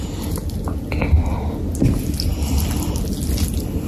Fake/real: real